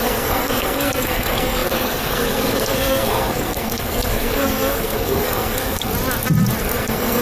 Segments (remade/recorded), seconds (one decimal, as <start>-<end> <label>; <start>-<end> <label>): 0.0-5.9 remade; 5.9-6.6 recorded; 6.6-7.2 remade